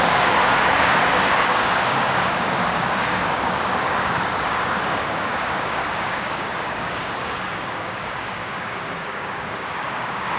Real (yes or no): no